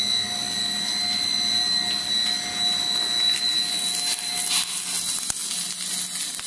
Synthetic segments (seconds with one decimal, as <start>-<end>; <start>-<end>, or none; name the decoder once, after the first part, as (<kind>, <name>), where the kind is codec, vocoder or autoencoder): none